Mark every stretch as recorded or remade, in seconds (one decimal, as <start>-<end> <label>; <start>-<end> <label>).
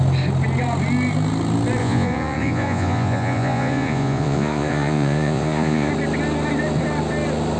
0.0-1.8 recorded; 1.8-5.9 remade; 5.9-7.6 recorded